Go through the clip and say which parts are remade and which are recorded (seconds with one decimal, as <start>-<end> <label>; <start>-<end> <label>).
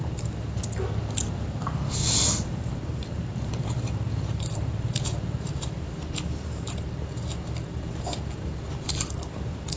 0.0-0.6 remade; 0.6-1.3 recorded; 1.3-9.8 remade